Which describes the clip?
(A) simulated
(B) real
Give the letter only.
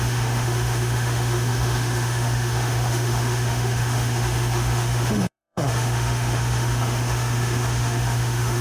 A